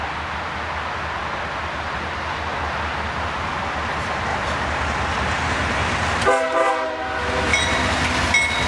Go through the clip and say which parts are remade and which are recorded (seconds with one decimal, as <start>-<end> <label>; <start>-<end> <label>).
0.0-4.3 recorded; 4.3-6.7 remade; 6.7-7.5 recorded; 7.5-8.1 remade; 8.1-8.7 recorded